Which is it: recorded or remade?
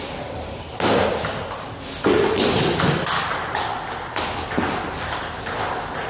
recorded